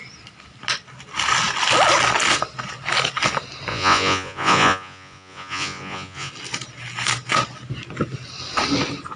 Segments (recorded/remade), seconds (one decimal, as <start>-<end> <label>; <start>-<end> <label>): 0.0-3.7 recorded; 3.7-6.3 remade; 6.3-9.2 recorded